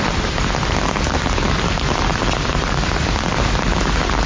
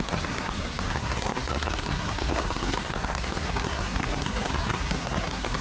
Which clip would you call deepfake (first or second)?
second